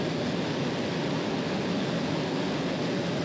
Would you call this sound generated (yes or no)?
no